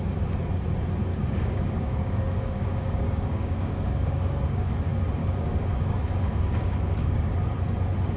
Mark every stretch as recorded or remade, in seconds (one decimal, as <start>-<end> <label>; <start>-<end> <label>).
0.0-1.1 recorded; 1.1-4.7 remade; 4.7-5.2 recorded; 5.2-7.3 remade; 7.3-8.2 recorded